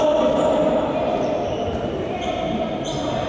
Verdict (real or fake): fake